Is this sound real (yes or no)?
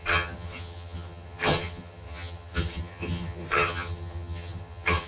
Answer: no